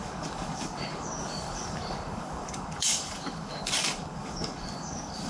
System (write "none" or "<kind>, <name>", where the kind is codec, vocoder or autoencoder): codec, DAC